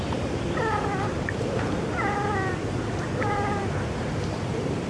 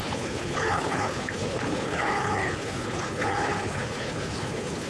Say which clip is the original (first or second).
first